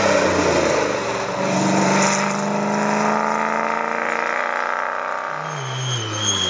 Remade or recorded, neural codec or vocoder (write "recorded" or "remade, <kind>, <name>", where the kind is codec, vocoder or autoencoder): recorded